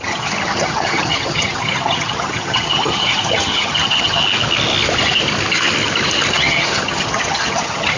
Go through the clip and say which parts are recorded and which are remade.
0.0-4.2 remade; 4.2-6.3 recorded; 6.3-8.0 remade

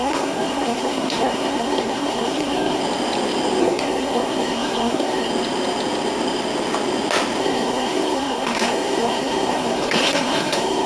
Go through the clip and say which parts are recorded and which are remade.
0.0-2.8 remade; 2.8-3.6 recorded; 3.6-5.3 remade; 5.3-7.4 recorded; 7.4-10.9 remade

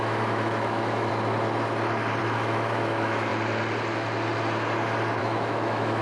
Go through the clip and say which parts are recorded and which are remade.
0.0-1.1 remade; 1.1-2.2 recorded; 2.2-3.3 remade; 3.3-5.2 recorded; 5.2-6.0 remade

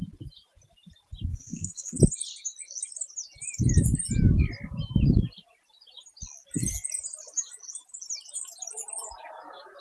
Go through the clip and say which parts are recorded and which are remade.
0.0-1.3 recorded; 1.3-2.0 remade; 2.0-9.8 recorded

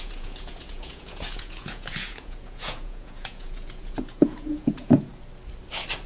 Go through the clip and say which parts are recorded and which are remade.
0.0-5.1 remade; 5.1-6.1 recorded